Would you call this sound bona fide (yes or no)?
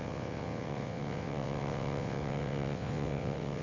no